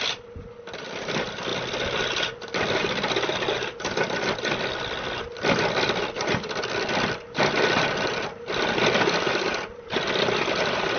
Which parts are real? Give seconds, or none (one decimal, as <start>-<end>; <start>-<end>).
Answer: 0.0-11.0